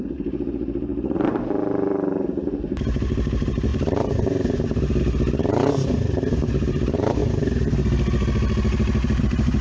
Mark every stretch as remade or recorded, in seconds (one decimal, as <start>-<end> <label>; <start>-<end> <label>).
0.0-7.2 remade; 7.2-9.2 recorded; 9.2-9.6 remade